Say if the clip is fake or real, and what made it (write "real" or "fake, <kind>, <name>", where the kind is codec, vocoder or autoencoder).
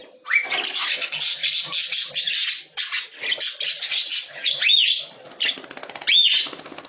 real